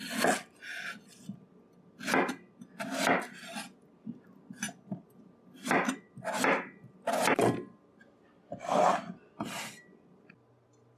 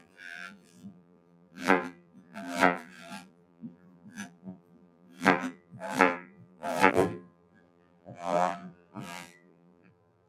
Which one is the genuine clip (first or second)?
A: first